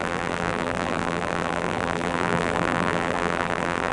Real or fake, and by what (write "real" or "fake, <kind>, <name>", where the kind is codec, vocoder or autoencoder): fake, vocoder, BigVGAN v2